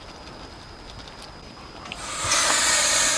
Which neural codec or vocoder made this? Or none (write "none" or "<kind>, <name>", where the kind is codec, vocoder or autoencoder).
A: none